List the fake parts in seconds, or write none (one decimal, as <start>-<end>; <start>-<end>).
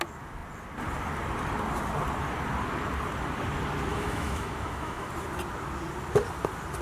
3.9-5.1